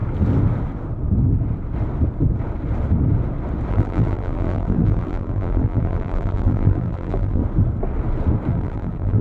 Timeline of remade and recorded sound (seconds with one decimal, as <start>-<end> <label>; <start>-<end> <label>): 0.0-3.7 recorded; 3.7-7.4 remade; 7.4-8.5 recorded; 8.5-9.2 remade